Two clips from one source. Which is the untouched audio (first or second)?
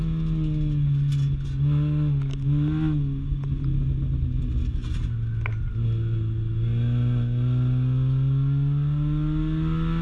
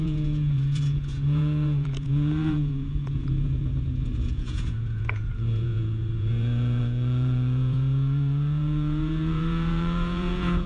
first